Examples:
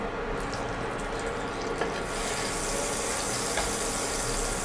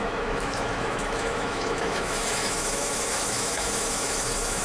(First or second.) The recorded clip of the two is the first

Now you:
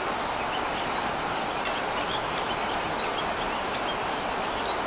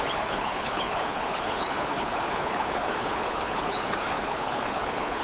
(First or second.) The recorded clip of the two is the first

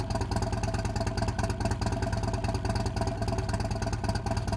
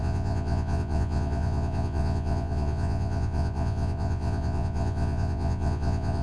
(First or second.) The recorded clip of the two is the first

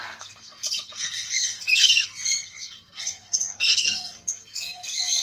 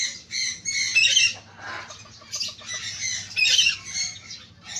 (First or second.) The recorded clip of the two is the second